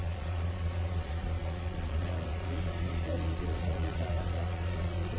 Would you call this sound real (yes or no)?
no